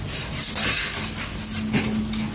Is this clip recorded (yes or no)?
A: yes